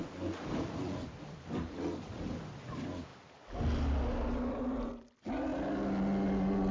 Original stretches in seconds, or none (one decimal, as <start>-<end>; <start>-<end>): 0.0-6.7